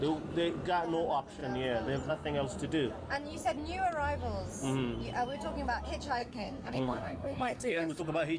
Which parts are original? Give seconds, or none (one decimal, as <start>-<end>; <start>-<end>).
0.0-6.2; 8.0-8.4